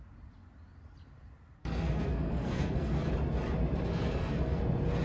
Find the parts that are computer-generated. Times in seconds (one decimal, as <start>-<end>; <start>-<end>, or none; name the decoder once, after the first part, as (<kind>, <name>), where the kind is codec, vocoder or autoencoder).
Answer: 1.6-3.1 (codec, SNAC); 3.9-4.6